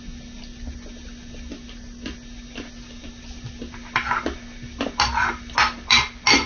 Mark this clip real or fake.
real